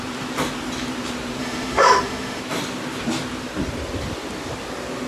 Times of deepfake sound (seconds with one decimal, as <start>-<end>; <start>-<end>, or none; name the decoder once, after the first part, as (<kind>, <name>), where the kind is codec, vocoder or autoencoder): 1.4-2.4 (autoencoder, DAC-VAE)